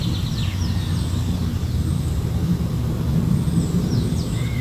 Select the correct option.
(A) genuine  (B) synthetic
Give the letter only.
A